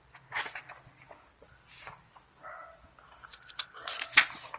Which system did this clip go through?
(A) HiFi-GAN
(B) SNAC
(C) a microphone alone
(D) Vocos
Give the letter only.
C